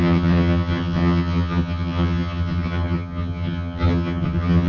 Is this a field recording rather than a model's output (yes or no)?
no